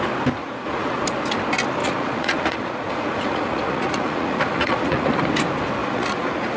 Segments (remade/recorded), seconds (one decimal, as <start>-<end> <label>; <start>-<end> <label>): 0.0-0.4 recorded; 0.4-1.0 remade; 1.0-1.8 recorded; 1.8-5.2 remade; 5.2-5.8 recorded; 5.8-6.6 remade